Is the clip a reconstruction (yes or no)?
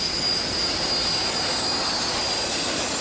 no